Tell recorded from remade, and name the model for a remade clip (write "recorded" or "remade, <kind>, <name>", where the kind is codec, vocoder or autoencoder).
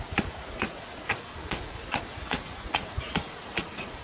remade, vocoder, Vocos